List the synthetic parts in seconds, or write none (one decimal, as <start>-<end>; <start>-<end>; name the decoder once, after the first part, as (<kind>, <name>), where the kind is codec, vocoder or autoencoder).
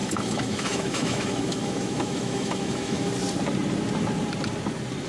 0.0-3.1 (autoencoder, DAC-VAE)